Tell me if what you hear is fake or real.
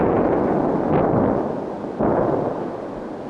real